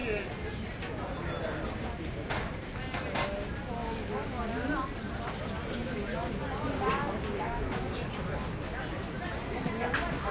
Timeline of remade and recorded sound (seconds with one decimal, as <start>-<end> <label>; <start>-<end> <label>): 0.0-10.3 recorded